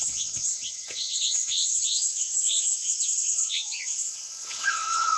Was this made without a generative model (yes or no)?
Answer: no